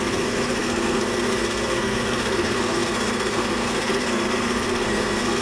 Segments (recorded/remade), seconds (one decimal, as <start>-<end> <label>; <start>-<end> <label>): 0.0-5.4 remade